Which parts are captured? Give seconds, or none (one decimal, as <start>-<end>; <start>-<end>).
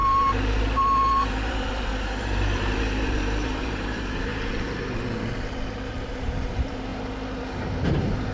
4.3-5.9; 6.9-7.6